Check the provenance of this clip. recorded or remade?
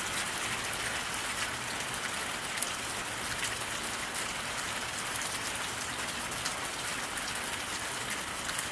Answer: recorded